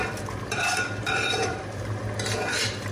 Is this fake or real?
fake